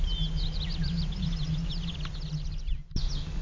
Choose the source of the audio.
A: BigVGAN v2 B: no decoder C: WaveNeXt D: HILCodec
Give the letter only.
B